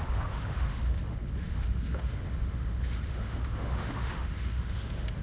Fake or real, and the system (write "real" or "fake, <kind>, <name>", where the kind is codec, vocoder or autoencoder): fake, autoencoder, DAC-VAE